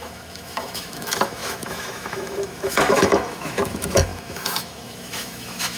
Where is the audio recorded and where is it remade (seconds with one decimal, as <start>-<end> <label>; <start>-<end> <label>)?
0.0-5.8 remade

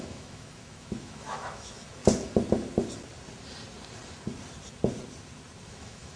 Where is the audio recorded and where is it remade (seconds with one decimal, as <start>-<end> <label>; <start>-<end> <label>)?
0.0-2.0 remade; 2.0-5.7 recorded; 5.7-6.2 remade

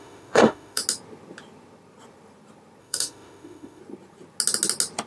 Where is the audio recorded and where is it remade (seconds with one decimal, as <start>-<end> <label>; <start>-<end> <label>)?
0.0-0.8 remade; 0.8-2.8 recorded; 2.8-3.8 remade; 3.8-5.1 recorded

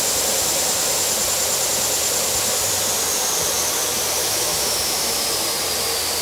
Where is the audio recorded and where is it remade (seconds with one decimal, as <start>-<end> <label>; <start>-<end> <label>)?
0.0-4.2 recorded; 4.2-5.2 remade; 5.2-6.2 recorded

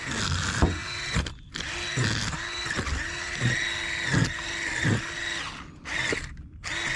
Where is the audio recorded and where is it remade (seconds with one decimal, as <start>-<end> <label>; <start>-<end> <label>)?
0.0-7.0 recorded